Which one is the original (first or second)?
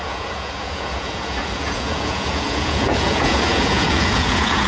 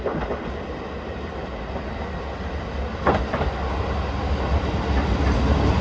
second